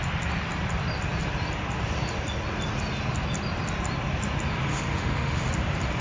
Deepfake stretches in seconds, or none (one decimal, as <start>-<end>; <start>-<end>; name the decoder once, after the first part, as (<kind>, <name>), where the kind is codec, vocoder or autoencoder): 4.7-5.5 (autoencoder, DAC-VAE)